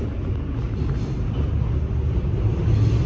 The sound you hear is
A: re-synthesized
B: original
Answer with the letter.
B